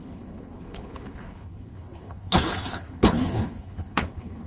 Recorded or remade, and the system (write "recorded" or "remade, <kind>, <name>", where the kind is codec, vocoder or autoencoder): remade, codec, HILCodec